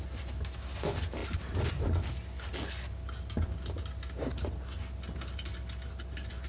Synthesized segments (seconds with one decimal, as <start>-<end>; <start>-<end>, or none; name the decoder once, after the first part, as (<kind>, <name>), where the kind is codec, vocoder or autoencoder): none